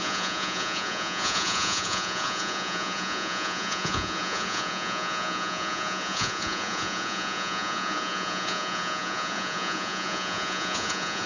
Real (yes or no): no